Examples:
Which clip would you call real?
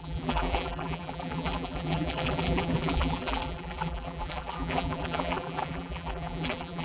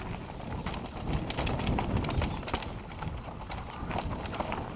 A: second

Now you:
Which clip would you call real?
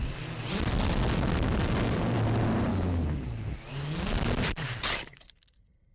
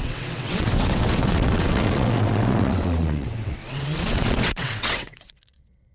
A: first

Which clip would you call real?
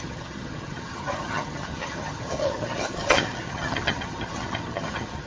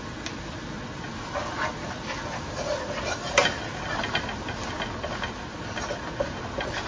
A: second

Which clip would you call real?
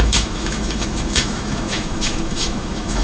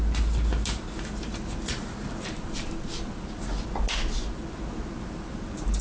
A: second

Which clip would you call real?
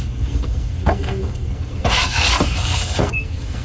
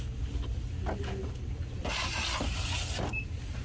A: second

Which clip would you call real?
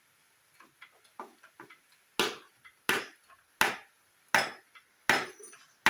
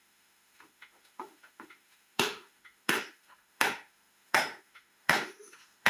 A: first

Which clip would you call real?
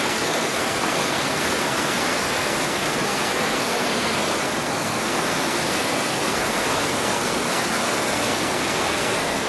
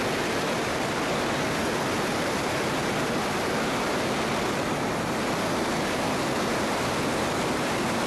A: second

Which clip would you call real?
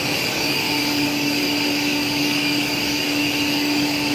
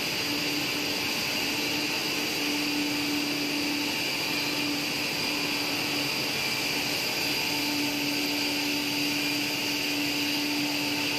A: second